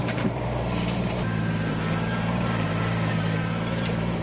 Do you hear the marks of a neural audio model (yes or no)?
yes